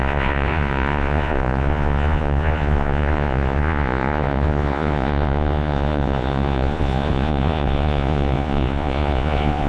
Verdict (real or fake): fake